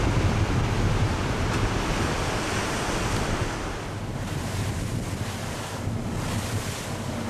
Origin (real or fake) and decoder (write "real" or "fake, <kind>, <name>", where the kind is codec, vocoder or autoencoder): real